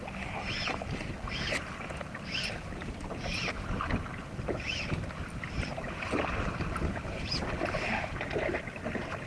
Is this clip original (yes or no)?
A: yes